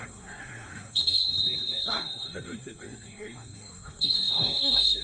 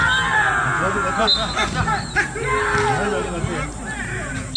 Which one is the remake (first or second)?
first